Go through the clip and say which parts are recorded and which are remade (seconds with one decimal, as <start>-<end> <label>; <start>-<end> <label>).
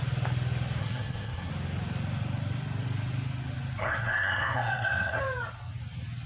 0.0-0.8 recorded; 0.8-1.5 remade; 1.5-3.8 recorded; 3.8-5.2 remade; 5.2-6.3 recorded